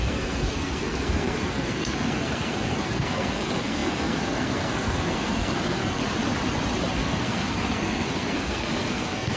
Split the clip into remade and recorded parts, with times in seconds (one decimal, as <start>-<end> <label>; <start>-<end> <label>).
0.0-6.0 remade; 6.0-6.9 recorded; 6.9-9.4 remade